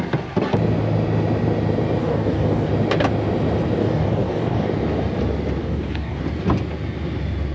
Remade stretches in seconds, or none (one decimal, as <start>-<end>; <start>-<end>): 2.0-2.7; 3.8-4.7; 5.6-6.2